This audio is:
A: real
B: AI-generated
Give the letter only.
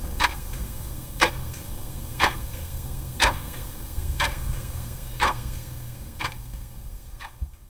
B